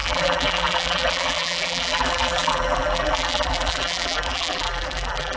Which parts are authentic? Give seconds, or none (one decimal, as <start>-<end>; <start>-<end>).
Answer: none